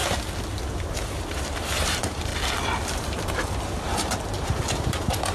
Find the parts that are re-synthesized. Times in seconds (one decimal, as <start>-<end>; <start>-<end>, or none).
0.8-2.3; 3.9-5.3